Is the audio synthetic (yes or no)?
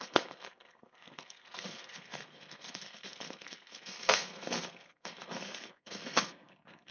yes